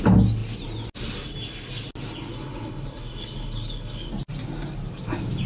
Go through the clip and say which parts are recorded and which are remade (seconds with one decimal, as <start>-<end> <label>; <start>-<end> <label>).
0.0-2.3 recorded; 2.3-4.1 remade; 4.1-5.5 recorded